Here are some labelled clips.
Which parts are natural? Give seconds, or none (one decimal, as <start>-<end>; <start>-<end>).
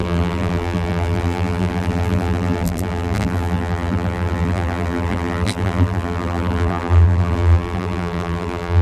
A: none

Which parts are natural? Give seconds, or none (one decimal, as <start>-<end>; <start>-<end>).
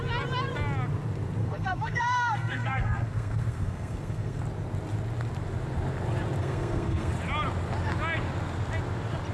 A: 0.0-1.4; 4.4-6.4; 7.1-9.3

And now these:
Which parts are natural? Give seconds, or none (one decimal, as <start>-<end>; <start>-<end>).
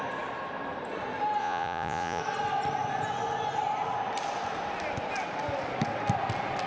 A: 0.0-1.4; 2.2-6.7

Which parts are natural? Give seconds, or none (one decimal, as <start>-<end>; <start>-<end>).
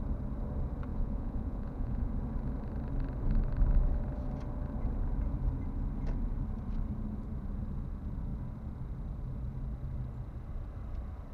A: 0.0-0.9; 2.1-11.3